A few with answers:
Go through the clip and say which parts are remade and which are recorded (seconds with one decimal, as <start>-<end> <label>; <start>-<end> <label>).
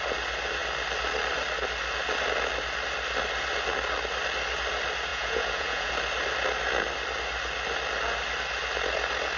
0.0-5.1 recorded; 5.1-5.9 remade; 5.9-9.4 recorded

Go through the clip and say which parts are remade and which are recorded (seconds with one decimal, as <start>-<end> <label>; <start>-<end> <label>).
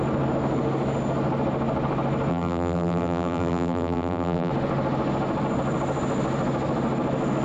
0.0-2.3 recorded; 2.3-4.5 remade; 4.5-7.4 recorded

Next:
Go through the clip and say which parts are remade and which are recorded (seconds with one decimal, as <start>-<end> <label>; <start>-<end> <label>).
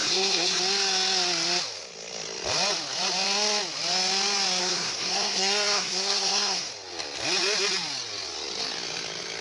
0.0-0.6 remade; 0.6-4.6 recorded; 4.6-6.7 remade; 6.7-9.4 recorded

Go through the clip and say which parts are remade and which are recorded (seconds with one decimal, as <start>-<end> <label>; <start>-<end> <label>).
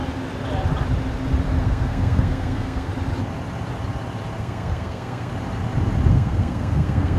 0.0-1.6 recorded; 1.6-2.9 remade; 2.9-4.4 recorded; 4.4-5.3 remade; 5.3-6.1 recorded; 6.1-7.2 remade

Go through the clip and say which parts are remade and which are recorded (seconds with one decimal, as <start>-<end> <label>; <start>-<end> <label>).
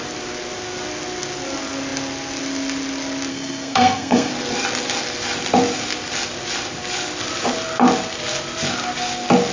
0.0-3.3 recorded; 3.3-4.3 remade; 4.3-9.5 recorded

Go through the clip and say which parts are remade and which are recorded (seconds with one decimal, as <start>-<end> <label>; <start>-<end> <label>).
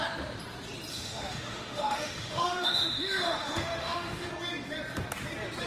0.0-0.9 recorded; 0.9-4.3 remade; 4.3-5.7 recorded